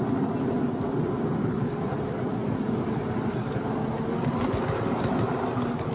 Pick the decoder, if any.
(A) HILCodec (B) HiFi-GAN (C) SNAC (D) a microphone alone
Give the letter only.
D